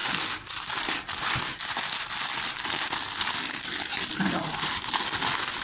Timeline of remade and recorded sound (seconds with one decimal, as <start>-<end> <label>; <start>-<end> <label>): 0.0-2.1 remade; 2.1-3.9 recorded; 3.9-4.8 remade; 4.8-5.6 recorded